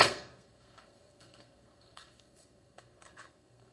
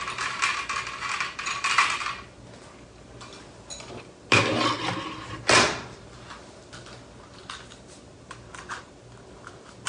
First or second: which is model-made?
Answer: first